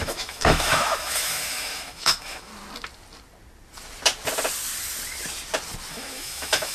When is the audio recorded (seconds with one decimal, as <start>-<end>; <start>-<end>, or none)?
2.5-5.9